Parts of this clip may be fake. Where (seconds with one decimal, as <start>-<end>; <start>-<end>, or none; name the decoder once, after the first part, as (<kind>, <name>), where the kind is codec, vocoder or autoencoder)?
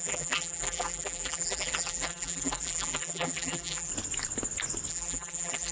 0.0-3.9 (vocoder, BigVGAN v2); 4.9-5.7